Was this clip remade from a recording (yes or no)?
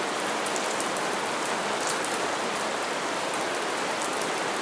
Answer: yes